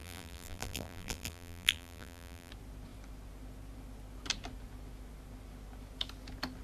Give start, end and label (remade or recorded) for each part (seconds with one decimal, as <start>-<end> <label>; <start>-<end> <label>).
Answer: 0.0-2.5 remade; 2.5-6.6 recorded